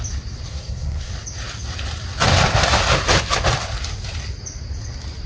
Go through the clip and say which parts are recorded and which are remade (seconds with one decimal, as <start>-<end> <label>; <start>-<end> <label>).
0.0-0.5 recorded; 0.5-1.1 remade; 1.1-5.3 recorded